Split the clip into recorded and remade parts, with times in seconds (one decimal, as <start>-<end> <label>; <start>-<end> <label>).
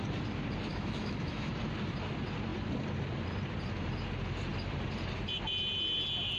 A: 0.0-0.7 recorded; 0.7-1.5 remade; 1.5-6.4 recorded